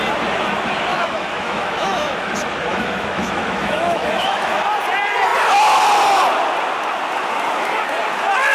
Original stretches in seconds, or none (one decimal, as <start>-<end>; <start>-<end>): 0.0-0.9; 2.3-2.7; 4.6-8.5